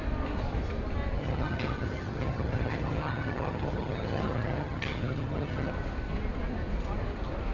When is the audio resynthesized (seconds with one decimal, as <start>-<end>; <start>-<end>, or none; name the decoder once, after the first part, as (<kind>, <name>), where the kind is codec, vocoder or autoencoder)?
1.2-5.7 (vocoder, HiFi-GAN)